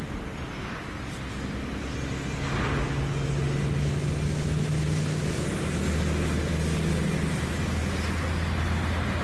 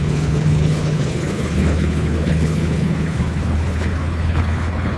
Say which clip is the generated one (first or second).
second